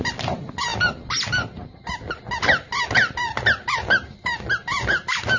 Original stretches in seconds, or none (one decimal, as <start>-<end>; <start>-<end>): 0.0-5.4